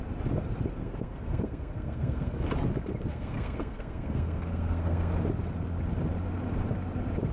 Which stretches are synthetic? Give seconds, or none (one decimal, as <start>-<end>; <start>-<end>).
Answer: 0.8-2.4; 3.1-5.1